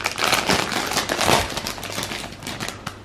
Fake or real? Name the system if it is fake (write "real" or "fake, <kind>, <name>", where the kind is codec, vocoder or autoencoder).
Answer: real